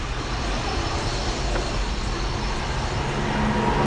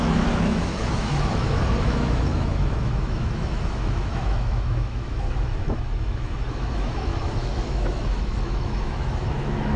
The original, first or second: first